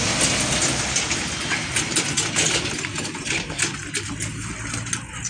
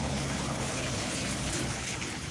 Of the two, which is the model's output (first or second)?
second